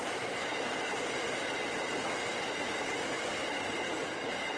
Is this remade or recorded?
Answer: recorded